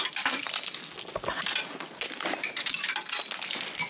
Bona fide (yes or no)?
yes